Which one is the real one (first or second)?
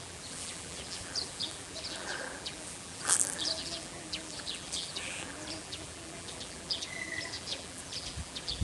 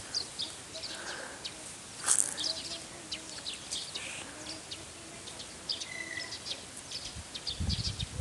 second